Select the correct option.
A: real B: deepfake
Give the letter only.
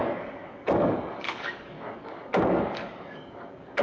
B